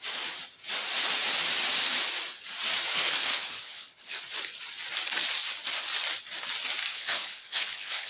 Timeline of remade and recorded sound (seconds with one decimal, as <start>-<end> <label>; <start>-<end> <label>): 0.0-2.9 recorded; 2.9-4.2 remade; 4.2-6.9 recorded; 6.9-8.1 remade